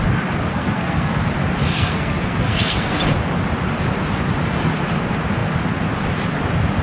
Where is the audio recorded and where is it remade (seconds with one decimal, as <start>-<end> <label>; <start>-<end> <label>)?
0.0-0.5 recorded; 0.5-1.2 remade; 1.2-1.7 recorded; 1.7-3.0 remade; 3.0-6.8 recorded